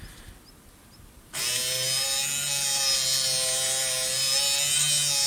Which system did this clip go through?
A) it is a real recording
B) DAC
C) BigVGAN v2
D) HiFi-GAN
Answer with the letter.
A